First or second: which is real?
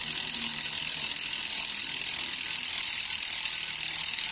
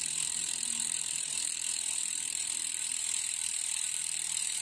first